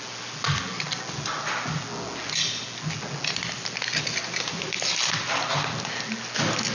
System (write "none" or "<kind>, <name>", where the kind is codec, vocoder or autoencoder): none